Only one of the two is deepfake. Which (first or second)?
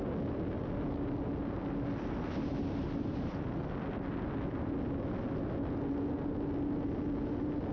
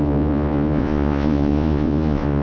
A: second